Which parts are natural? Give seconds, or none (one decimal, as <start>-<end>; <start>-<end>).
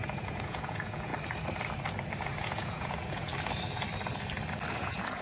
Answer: 1.1-2.2; 3.3-4.7